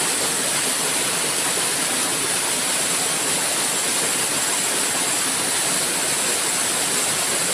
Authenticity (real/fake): real